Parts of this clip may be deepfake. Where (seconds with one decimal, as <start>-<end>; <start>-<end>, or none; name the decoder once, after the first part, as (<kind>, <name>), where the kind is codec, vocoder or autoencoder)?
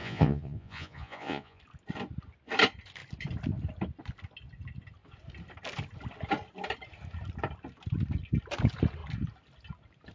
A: 0.0-1.6 (vocoder, Vocos)